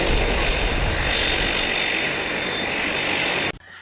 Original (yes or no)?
yes